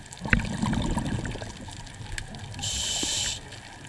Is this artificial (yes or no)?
no